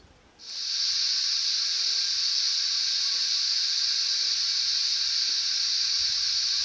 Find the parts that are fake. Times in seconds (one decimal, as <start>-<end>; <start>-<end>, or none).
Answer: none